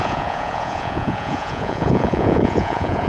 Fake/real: fake